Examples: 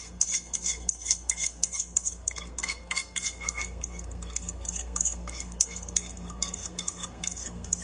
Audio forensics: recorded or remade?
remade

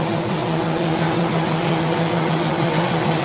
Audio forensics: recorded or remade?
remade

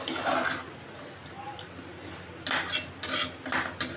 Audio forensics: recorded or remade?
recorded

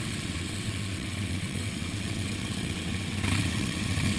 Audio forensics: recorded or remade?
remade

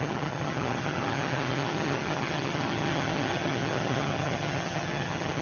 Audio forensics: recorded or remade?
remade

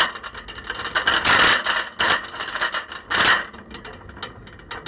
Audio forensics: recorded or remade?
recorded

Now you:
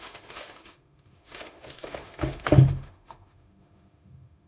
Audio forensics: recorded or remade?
remade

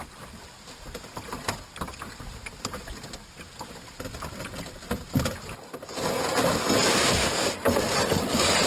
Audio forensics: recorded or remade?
recorded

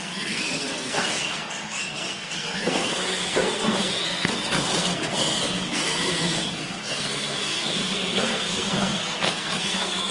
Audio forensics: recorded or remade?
remade